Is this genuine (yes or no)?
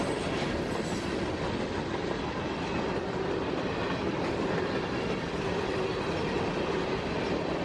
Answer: yes